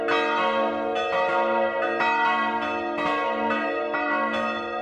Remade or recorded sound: recorded